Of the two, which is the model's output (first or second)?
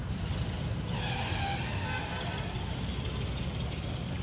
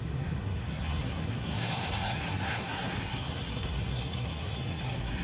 second